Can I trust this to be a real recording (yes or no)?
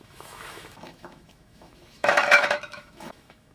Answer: no